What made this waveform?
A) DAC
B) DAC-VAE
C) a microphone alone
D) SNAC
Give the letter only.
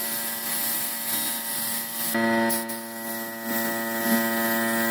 C